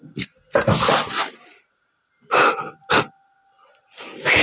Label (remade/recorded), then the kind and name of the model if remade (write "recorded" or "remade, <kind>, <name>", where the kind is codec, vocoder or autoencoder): recorded